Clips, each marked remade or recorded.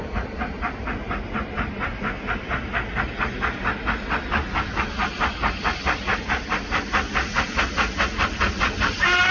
recorded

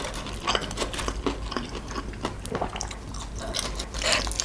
recorded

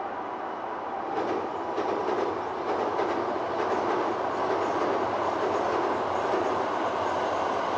recorded